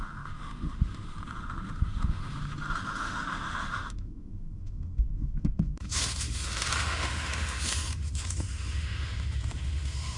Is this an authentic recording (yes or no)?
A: no